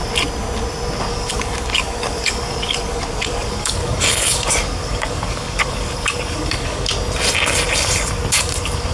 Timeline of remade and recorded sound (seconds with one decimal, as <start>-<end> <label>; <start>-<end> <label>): 0.0-1.0 recorded; 1.0-6.9 remade; 6.9-8.3 recorded; 8.3-8.9 remade